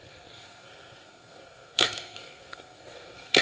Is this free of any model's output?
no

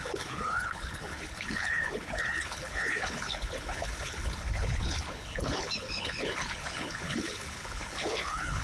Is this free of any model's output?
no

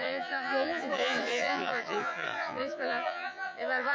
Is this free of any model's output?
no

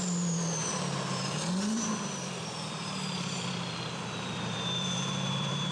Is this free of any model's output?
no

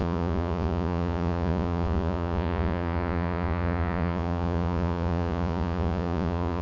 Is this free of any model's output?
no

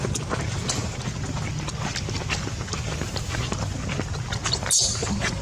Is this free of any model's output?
yes